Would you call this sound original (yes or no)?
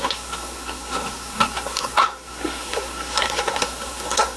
no